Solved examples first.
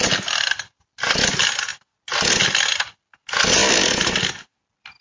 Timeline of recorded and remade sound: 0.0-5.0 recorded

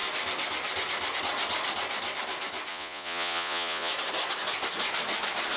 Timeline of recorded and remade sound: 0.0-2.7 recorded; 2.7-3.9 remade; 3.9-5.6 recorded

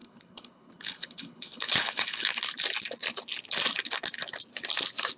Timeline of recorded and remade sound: 0.0-2.3 remade; 2.3-5.2 recorded

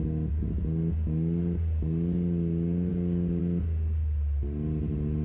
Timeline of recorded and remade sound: 0.0-2.9 recorded; 2.9-3.4 remade; 3.4-5.2 recorded